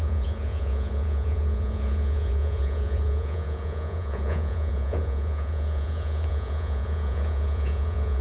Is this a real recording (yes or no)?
no